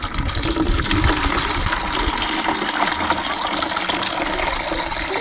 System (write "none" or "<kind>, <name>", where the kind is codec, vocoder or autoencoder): none